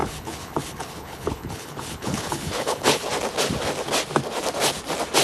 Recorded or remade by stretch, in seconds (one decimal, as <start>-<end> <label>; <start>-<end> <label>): 0.0-3.1 remade; 3.1-5.2 recorded